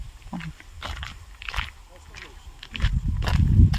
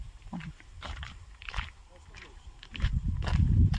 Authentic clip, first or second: first